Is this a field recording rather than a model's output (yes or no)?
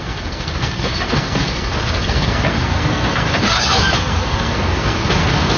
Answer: no